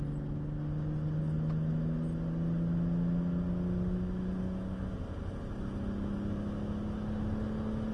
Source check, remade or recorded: recorded